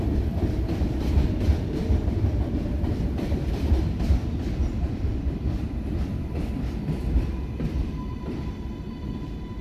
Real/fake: fake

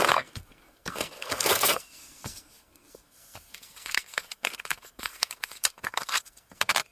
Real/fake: fake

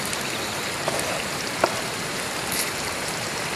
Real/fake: fake